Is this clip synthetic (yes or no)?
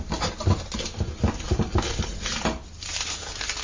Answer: no